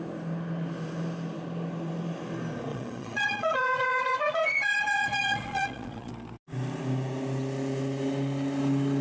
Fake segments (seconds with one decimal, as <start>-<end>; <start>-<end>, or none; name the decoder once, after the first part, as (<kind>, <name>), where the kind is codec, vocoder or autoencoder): 2.7-6.1 (vocoder, Vocos)